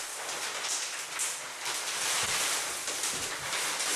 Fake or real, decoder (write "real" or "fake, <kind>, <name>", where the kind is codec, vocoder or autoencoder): real